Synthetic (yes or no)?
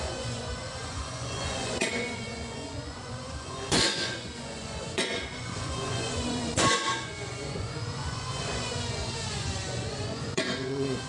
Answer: yes